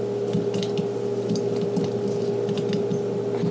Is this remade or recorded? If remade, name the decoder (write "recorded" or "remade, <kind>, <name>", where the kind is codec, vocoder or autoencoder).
recorded